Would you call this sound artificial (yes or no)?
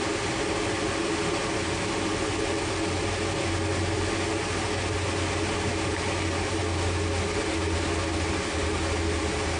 no